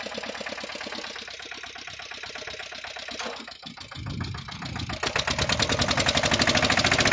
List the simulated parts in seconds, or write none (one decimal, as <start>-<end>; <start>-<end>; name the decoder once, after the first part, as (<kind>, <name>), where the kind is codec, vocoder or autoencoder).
none